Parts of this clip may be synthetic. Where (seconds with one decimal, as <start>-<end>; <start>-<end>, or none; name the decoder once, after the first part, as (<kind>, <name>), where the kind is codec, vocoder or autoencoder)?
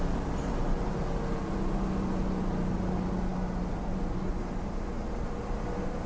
none